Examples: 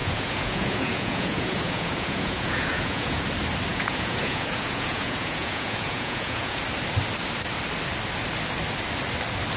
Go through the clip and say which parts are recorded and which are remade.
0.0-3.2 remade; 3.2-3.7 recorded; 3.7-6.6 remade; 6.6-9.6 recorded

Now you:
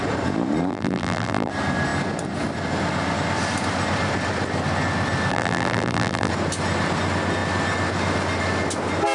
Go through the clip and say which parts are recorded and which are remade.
0.0-0.7 recorded; 0.7-1.5 remade; 1.5-5.3 recorded; 5.3-6.3 remade; 6.3-9.1 recorded